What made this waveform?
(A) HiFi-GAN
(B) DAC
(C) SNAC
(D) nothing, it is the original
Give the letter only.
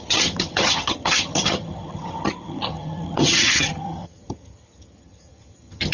A